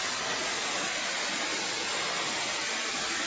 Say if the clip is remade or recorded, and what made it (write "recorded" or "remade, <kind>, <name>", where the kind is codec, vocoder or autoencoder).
recorded